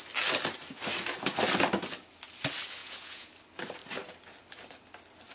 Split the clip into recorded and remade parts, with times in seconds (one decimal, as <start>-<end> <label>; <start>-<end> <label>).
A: 0.0-2.8 recorded; 2.8-3.3 remade; 3.3-5.3 recorded